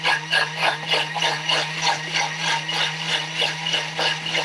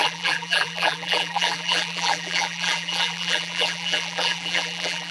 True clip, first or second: first